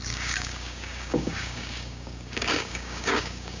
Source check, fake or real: fake